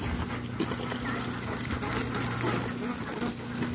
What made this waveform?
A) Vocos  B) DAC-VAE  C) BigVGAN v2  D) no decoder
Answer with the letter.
D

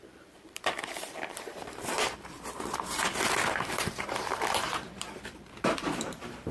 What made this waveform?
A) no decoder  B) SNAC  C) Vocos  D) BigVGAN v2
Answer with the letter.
D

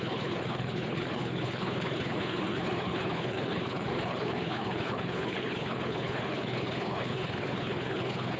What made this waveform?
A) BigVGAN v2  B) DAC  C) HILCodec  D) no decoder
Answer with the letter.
C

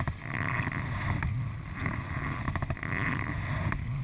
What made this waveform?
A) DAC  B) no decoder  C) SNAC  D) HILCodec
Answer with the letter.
B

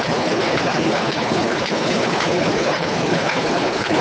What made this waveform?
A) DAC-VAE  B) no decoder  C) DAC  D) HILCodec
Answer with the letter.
D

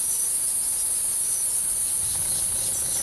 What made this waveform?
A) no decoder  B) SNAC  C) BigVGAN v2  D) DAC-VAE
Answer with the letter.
A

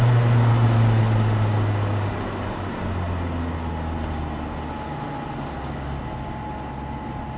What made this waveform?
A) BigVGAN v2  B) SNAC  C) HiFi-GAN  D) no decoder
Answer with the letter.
D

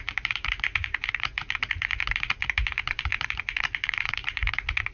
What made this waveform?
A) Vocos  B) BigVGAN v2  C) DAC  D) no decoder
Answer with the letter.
A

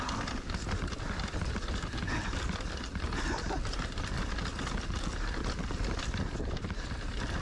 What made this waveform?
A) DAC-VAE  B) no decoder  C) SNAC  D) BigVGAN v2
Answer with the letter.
B